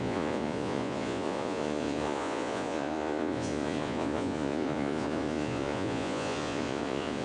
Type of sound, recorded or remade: remade